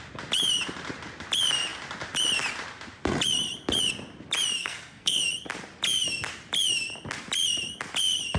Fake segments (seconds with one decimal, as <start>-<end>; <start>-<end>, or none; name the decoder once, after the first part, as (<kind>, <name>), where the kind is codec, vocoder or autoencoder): 4.6-5.2 (codec, SNAC)